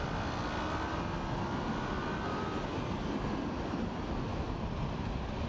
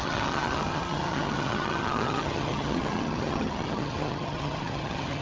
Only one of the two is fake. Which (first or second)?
second